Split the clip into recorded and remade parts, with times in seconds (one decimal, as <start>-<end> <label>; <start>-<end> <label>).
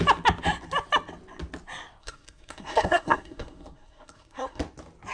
0.0-2.0 recorded; 2.0-4.6 remade; 4.6-5.1 recorded